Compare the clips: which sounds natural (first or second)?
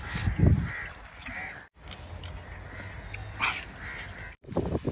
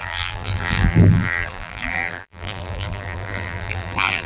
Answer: first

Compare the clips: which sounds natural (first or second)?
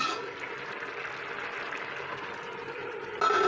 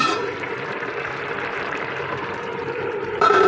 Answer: first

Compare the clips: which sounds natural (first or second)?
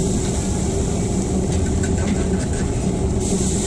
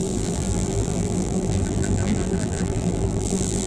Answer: first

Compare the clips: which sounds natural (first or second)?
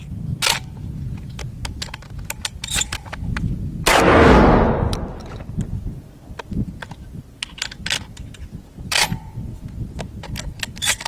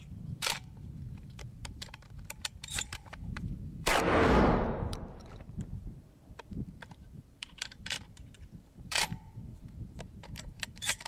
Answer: first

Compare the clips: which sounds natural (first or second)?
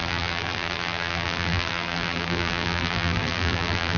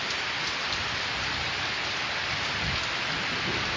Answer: second